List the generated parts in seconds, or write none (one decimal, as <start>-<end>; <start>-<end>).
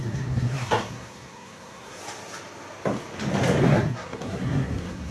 0.0-2.0; 3.6-5.1